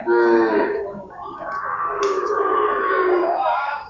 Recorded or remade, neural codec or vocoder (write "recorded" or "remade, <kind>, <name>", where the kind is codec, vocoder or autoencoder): remade, codec, DAC